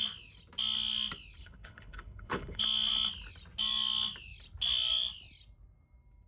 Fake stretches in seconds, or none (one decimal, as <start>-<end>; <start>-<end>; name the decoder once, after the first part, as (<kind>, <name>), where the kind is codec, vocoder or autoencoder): 1.4-2.6 (codec, HILCodec)